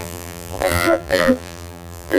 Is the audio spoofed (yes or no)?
yes